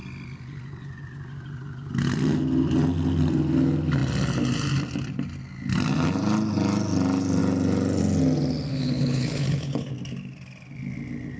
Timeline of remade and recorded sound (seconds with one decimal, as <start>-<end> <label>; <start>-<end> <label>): 0.0-8.7 recorded; 8.7-9.9 remade; 9.9-11.4 recorded